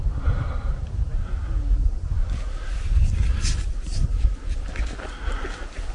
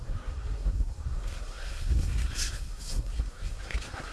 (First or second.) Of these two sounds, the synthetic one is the second